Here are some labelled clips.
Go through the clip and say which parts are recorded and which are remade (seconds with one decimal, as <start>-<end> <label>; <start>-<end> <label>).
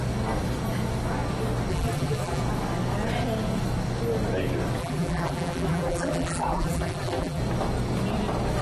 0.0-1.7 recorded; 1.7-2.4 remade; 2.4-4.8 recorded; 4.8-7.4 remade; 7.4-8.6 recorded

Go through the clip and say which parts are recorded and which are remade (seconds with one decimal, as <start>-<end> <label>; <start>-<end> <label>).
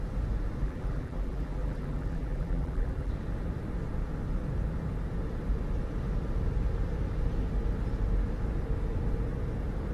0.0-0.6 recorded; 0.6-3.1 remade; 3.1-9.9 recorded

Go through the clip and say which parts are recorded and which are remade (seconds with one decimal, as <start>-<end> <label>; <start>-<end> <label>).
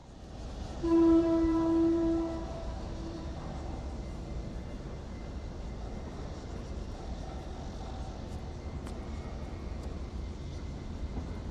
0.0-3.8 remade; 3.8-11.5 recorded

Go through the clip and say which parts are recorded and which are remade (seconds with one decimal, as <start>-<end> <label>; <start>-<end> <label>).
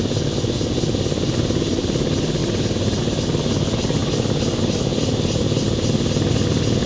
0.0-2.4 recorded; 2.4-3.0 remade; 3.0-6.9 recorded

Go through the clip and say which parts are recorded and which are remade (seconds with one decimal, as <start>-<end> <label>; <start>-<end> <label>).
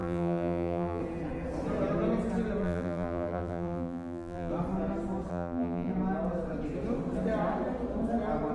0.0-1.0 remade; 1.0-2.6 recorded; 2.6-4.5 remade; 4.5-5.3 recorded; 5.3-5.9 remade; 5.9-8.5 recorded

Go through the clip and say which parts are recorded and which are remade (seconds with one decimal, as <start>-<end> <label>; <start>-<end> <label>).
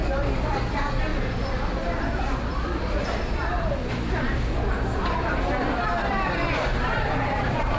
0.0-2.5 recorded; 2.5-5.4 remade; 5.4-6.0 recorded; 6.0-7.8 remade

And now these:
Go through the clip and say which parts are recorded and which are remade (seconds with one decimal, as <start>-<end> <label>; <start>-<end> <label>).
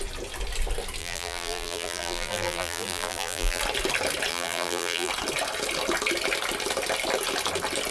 0.0-1.0 recorded; 1.0-3.6 remade; 3.6-4.3 recorded; 4.3-5.1 remade; 5.1-7.9 recorded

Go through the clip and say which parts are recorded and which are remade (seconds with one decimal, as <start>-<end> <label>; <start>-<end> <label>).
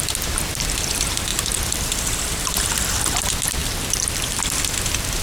0.0-1.3 recorded; 1.3-2.5 remade; 2.5-3.6 recorded; 3.6-4.4 remade; 4.4-5.2 recorded